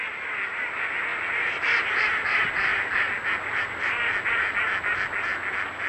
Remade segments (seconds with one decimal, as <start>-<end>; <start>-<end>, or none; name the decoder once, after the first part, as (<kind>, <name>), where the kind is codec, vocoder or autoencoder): none